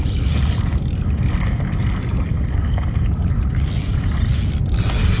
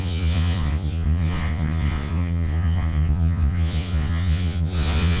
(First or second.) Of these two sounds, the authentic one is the first